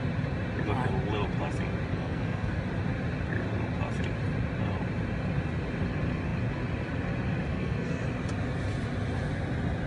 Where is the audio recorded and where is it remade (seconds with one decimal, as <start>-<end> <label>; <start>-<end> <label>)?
0.0-1.9 recorded; 1.9-2.6 remade; 2.6-7.5 recorded; 7.5-8.0 remade; 8.0-9.9 recorded

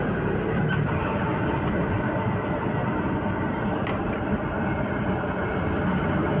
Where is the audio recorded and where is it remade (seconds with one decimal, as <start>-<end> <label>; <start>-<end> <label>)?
0.0-6.4 recorded

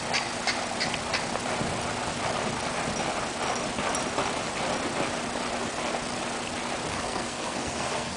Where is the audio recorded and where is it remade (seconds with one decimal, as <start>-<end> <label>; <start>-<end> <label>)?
0.0-6.9 recorded; 6.9-8.2 remade

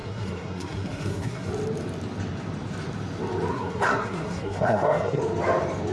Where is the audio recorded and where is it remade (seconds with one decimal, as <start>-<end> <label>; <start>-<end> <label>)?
0.0-1.5 remade; 1.5-3.5 recorded; 3.5-5.2 remade; 5.2-5.9 recorded

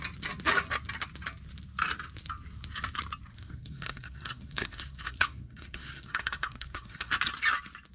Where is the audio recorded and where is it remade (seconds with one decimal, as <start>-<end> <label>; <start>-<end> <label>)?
0.0-3.3 recorded; 3.3-7.1 remade; 7.1-7.9 recorded